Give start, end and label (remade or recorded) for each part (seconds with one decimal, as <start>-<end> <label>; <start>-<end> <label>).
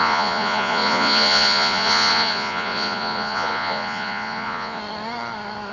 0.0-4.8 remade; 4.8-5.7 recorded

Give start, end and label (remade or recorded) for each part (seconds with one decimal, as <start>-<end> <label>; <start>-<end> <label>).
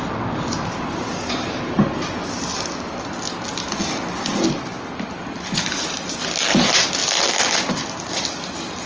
0.0-8.9 recorded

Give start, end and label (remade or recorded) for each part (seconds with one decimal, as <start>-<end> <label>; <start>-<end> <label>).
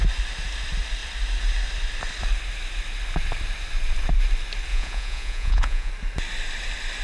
0.0-4.7 recorded; 4.7-5.9 remade; 5.9-7.0 recorded